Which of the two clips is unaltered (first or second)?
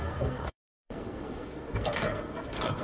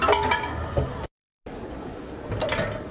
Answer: second